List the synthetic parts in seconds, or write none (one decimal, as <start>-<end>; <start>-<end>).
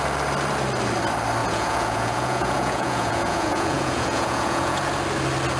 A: 1.4-4.8